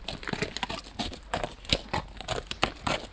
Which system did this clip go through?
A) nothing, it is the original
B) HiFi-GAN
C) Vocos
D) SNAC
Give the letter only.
A